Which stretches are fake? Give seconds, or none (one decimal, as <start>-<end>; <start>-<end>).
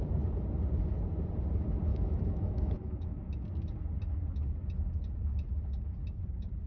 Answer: 1.9-3.3